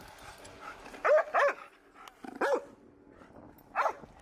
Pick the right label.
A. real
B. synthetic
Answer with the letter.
A